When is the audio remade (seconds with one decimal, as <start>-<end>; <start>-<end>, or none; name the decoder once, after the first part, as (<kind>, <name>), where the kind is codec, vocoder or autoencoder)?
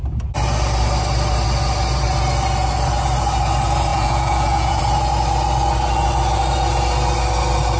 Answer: 3.9-4.8 (vocoder, Vocos)